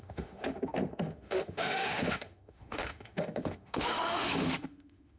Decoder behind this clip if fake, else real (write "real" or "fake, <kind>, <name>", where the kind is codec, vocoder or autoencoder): fake, autoencoder, DAC-VAE